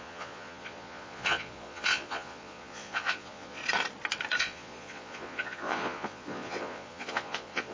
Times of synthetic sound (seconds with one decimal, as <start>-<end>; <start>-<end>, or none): 0.0-3.6; 4.4-7.7